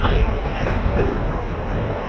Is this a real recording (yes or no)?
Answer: no